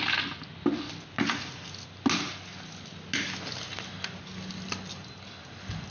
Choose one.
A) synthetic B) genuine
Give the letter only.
B